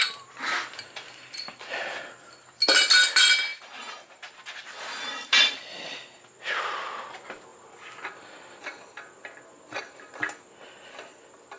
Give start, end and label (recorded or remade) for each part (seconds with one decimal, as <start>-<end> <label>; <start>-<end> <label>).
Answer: 0.0-4.6 recorded; 4.6-7.1 remade; 7.1-11.6 recorded